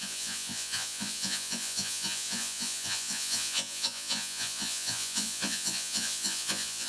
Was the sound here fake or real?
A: fake